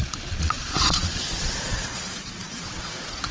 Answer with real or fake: fake